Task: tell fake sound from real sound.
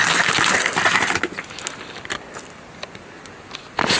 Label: real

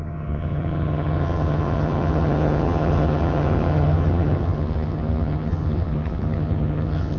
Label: fake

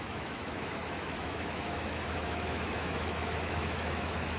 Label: fake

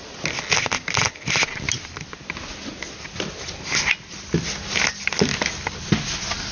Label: real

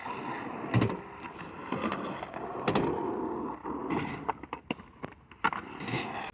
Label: real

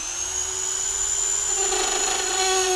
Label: fake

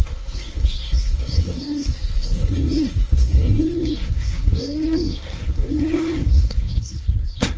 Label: fake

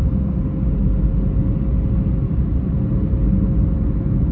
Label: real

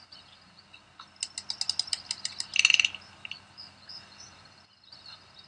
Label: real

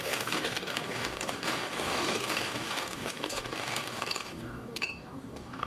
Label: fake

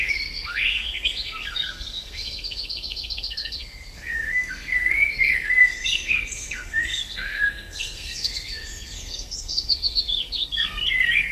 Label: fake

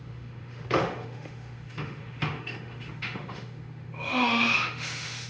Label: fake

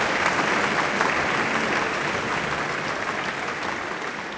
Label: real